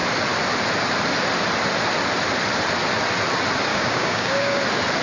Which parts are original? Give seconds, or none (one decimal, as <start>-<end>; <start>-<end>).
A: 0.0-3.7; 4.6-5.0